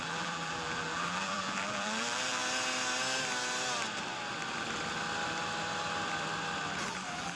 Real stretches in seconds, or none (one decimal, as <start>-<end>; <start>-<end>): 2.4-6.8